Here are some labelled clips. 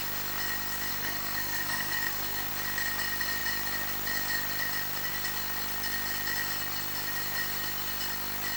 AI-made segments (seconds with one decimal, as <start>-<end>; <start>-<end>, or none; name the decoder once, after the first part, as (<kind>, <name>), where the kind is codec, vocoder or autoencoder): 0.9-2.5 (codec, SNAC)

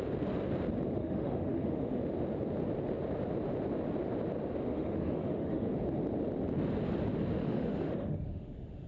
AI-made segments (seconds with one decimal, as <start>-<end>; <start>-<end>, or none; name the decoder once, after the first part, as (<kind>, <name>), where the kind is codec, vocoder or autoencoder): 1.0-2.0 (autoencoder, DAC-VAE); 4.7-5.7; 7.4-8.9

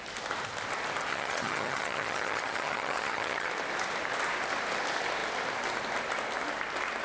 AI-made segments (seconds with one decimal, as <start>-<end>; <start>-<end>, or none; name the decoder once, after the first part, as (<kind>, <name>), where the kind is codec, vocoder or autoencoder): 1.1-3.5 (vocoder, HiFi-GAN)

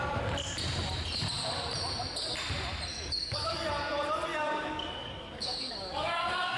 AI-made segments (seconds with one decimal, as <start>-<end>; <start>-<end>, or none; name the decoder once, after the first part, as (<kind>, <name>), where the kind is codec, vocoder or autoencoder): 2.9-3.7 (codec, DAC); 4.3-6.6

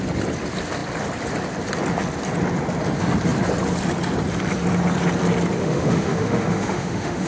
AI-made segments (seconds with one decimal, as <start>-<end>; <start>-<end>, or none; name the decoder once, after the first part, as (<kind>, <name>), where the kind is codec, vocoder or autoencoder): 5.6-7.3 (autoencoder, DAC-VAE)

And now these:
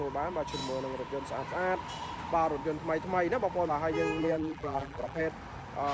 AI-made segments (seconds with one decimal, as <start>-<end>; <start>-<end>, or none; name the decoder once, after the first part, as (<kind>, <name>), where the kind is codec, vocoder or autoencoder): 4.2-5.2 (vocoder, BigVGAN v2)